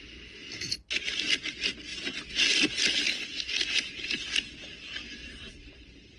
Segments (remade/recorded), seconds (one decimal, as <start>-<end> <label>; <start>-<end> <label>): 0.0-6.2 recorded